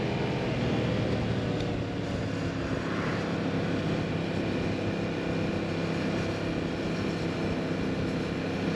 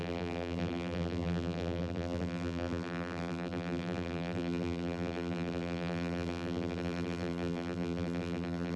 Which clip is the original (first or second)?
first